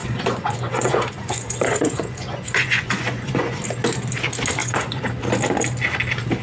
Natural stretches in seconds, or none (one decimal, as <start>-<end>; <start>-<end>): 3.6-4.6; 5.1-6.4